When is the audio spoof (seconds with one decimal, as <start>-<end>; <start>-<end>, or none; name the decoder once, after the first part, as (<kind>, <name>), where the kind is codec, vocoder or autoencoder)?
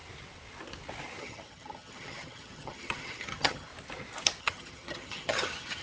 1.2-3.7 (vocoder, HiFi-GAN); 4.4-5.8